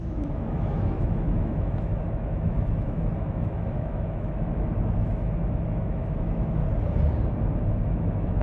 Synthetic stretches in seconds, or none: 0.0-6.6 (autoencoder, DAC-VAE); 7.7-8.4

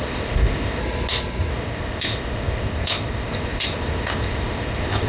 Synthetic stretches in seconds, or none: 0.0-0.8 (codec, ZipCodec); 1.5-5.1